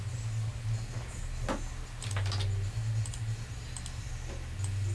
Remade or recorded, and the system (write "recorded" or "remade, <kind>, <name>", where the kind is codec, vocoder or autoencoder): recorded